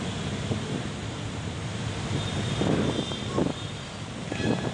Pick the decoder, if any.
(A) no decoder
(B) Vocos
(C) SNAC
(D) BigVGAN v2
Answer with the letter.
A